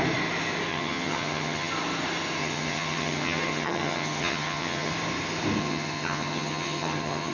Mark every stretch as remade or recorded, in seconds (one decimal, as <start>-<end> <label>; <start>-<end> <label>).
0.0-0.7 recorded; 0.7-1.7 remade; 1.7-2.4 recorded; 2.4-4.9 remade; 4.9-5.6 recorded; 5.6-7.3 remade